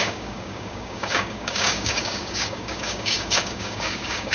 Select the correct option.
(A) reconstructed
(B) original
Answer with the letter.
A